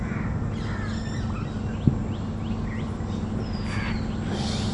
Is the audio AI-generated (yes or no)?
no